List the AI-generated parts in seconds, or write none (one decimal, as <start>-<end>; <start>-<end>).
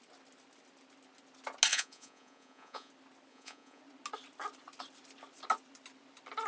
1.7-2.9; 3.3-3.8